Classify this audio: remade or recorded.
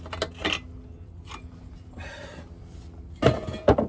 recorded